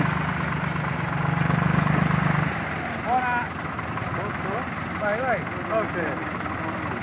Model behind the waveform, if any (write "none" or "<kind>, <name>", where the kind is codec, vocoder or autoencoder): none